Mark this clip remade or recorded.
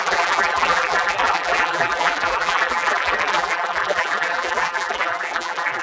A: remade